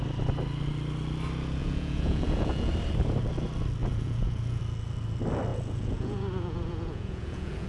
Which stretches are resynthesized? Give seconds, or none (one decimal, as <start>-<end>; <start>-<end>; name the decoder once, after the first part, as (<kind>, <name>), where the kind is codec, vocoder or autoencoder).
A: 1.6-2.7 (vocoder, Vocos); 3.8-4.6; 5.5-7.7